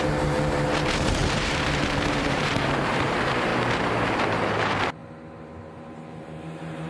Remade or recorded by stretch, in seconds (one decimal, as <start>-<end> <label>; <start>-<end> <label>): 0.0-3.5 remade; 3.5-4.6 recorded; 4.6-5.0 remade; 5.0-5.7 recorded; 5.7-6.9 remade

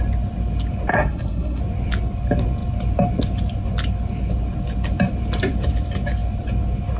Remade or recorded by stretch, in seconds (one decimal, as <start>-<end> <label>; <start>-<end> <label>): 0.0-0.9 recorded; 0.9-1.6 remade; 1.6-7.0 recorded

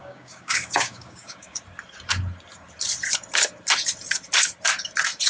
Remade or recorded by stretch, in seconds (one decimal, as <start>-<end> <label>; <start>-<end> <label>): 0.0-1.6 remade; 1.6-5.3 recorded

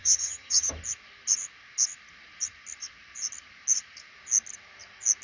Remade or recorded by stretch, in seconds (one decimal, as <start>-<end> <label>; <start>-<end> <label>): 0.0-0.7 remade; 0.7-5.2 recorded

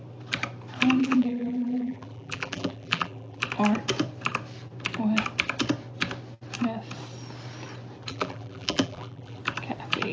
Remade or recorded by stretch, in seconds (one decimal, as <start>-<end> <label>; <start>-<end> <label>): 0.0-1.0 recorded; 1.0-3.4 remade; 3.4-8.1 recorded; 8.1-9.4 remade; 9.4-10.1 recorded

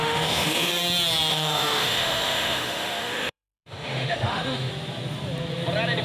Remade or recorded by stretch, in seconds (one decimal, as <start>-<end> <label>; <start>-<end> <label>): 0.0-0.7 remade; 0.7-1.3 recorded; 1.3-4.7 remade; 4.7-6.0 recorded

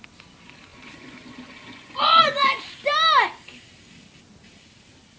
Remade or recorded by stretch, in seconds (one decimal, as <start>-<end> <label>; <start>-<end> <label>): 0.0-0.7 recorded; 0.7-2.6 remade; 2.6-5.2 recorded

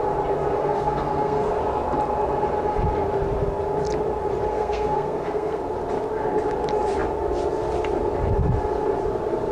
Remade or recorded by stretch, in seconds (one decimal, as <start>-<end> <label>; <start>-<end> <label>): 0.0-0.6 recorded; 0.6-1.6 remade; 1.6-4.5 recorded; 4.5-5.6 remade; 5.6-9.5 recorded